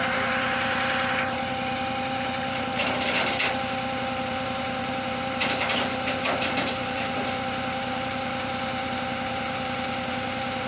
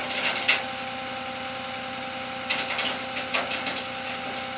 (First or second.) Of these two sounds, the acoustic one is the second